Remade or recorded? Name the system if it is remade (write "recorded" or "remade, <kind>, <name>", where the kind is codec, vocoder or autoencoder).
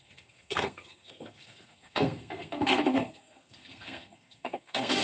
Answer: remade, codec, SNAC